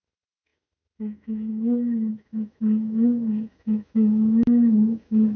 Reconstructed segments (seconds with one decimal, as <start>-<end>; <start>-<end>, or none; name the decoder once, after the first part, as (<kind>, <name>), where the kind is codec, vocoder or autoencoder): 0.0-5.4 (autoencoder, DAC-VAE)